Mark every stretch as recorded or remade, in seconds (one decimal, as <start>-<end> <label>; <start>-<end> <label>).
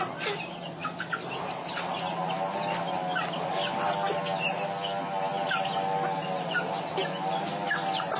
0.0-8.2 recorded